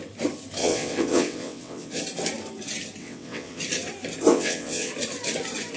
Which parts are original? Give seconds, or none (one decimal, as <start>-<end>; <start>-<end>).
0.0-0.6; 2.0-3.0; 3.6-4.3; 4.9-5.8